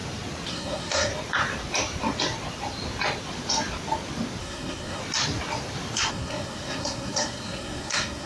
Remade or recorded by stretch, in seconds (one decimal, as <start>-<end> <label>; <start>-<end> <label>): 0.0-0.5 recorded; 0.5-1.1 remade; 1.1-4.4 recorded; 4.4-5.0 remade; 5.0-6.1 recorded; 6.1-8.3 remade